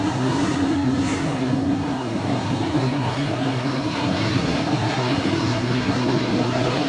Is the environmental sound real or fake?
fake